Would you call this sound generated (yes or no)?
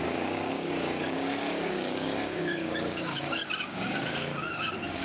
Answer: yes